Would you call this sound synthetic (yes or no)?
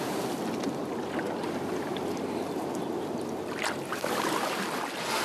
no